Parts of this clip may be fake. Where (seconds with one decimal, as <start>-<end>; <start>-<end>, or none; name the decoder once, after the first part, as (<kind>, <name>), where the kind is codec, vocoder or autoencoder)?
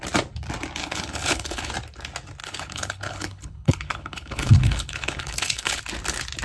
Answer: 0.8-1.7 (codec, HILCodec); 2.4-5.8